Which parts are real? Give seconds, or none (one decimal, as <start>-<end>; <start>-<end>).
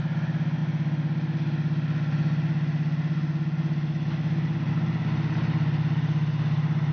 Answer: 0.0-6.9